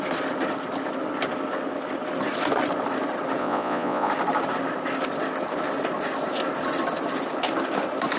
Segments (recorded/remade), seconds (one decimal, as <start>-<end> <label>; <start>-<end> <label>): 0.0-3.4 recorded; 3.4-4.1 remade; 4.1-8.2 recorded